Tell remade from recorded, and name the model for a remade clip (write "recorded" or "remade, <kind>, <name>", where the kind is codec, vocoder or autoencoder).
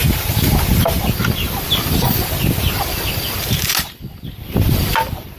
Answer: recorded